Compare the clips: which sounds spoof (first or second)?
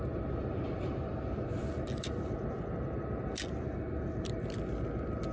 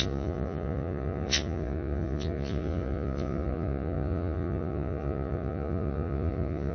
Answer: second